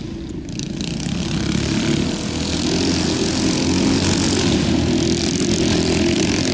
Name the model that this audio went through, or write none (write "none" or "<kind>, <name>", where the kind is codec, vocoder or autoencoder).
none